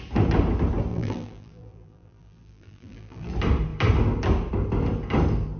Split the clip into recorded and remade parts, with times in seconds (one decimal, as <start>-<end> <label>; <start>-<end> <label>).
0.0-0.9 recorded; 0.9-3.3 remade; 3.3-5.6 recorded